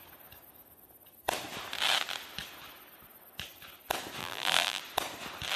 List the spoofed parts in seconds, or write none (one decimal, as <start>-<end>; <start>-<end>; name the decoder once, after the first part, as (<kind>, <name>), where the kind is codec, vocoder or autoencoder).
4.2-4.8 (vocoder, BigVGAN v2)